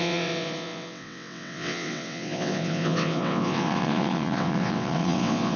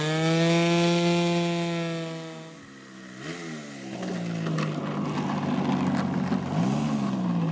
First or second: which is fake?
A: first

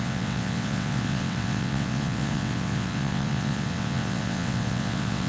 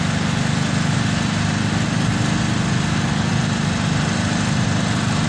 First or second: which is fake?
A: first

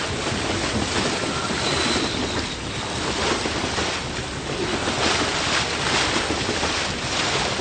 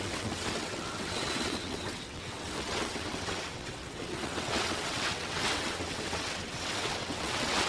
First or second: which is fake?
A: second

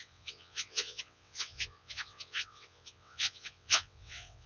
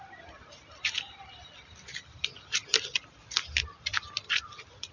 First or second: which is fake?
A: first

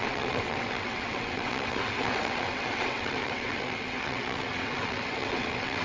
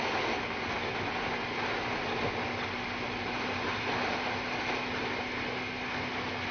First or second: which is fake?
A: first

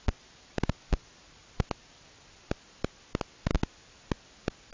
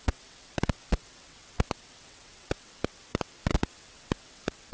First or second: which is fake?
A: second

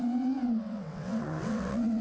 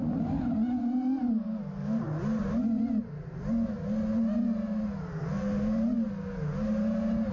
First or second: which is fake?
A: first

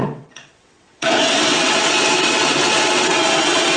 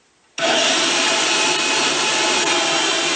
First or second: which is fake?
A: first